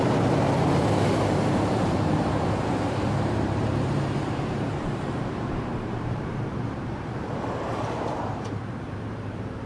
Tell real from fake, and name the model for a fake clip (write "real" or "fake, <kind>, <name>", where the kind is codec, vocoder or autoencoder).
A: fake, vocoder, BigVGAN v2